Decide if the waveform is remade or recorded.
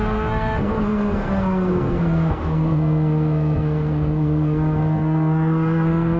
remade